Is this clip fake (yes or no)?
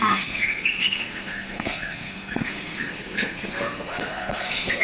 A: yes